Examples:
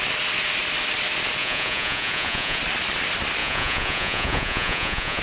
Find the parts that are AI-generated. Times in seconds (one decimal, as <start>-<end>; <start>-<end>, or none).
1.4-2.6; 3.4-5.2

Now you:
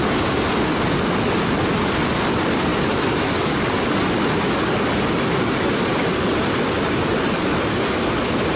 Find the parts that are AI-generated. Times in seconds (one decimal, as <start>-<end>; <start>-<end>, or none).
none

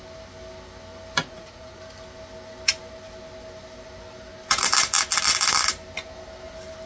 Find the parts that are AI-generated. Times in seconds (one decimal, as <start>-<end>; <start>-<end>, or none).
1.2-1.8

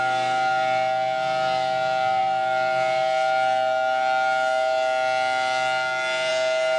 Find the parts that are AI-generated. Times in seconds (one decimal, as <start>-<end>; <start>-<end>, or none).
none